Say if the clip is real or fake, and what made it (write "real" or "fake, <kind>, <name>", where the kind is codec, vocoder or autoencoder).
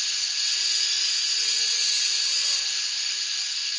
real